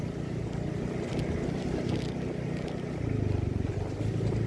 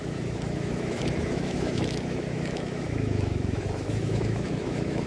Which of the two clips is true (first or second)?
first